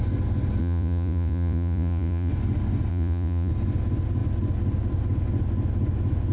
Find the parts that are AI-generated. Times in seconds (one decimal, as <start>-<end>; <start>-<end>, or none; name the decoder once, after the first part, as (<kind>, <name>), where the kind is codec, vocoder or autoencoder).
0.6-2.3 (vocoder, Vocos); 2.9-3.5